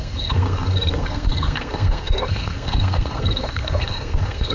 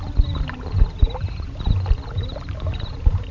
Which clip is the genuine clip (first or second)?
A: second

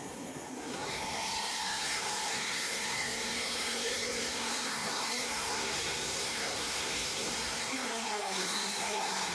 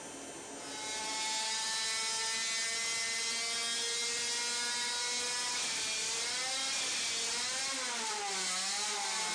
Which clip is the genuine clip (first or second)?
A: second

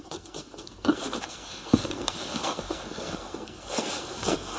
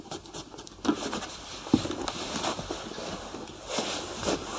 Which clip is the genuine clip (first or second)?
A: second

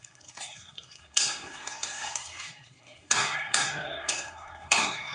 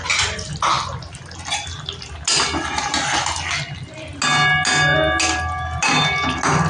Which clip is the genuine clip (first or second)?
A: second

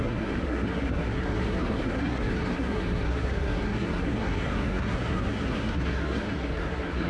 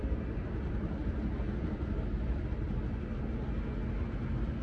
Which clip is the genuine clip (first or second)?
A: second